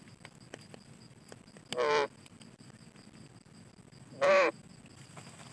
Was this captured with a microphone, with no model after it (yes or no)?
yes